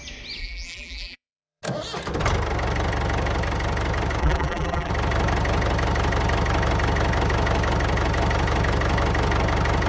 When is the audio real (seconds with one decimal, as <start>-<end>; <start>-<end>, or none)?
0.0-0.4; 1.6-4.2; 4.9-9.9